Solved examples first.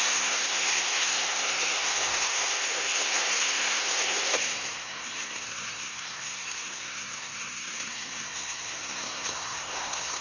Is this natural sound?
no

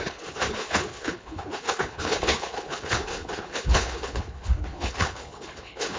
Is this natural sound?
no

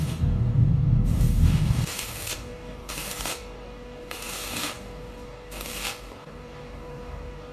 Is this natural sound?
no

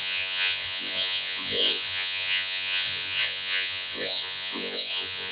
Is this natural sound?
no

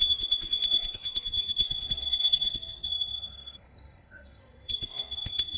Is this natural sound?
no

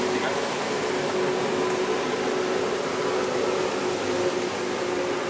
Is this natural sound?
yes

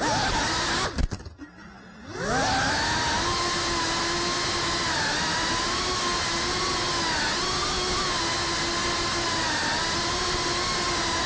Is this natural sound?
yes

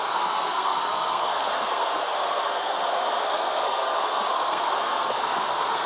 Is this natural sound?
no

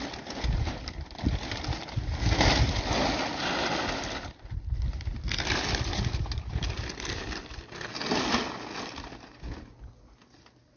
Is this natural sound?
yes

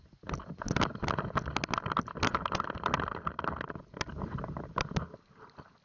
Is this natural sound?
yes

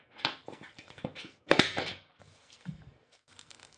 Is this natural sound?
no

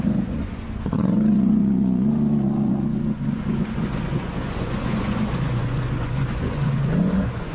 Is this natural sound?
no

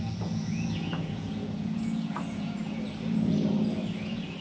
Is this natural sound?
no